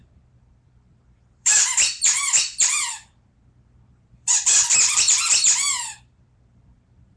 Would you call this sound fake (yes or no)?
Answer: yes